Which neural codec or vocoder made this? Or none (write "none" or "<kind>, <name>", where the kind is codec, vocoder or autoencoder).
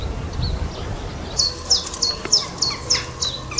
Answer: none